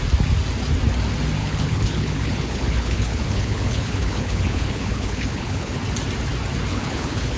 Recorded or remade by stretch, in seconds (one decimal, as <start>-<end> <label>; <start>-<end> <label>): 0.0-1.4 recorded; 1.4-5.8 remade; 5.8-6.7 recorded; 6.7-7.4 remade